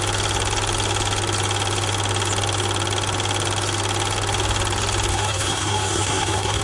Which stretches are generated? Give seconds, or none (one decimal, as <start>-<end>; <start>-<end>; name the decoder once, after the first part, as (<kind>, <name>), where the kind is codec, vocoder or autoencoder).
5.1-6.6 (codec, SNAC)